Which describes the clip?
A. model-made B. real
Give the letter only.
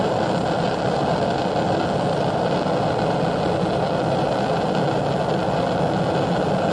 B